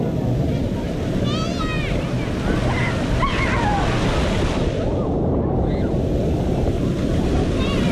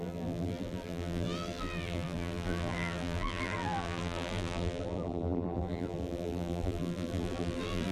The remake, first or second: second